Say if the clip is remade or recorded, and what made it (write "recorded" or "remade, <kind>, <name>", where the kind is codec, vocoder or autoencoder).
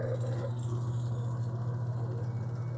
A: recorded